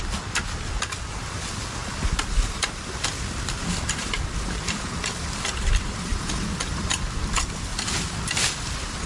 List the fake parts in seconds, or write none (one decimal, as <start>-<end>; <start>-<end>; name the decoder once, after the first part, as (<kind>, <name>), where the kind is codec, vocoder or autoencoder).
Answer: 0.0-1.8 (vocoder, BigVGAN v2); 2.3-6.1; 6.7-7.7; 8.7-9.1